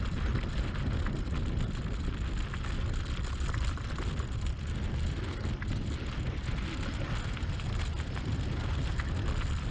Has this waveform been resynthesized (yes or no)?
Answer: no